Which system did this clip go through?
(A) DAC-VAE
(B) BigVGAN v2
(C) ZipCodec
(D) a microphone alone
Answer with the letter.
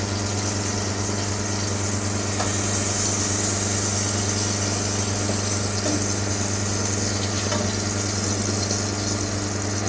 D